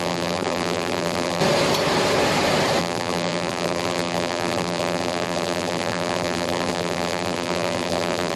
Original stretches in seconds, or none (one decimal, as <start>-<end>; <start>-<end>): 1.4-2.8